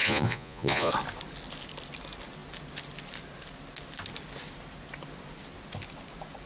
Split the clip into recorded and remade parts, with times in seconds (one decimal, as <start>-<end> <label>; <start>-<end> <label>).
0.0-0.9 remade; 0.9-6.5 recorded